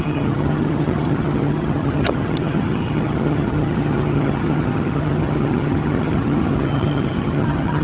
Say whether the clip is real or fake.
fake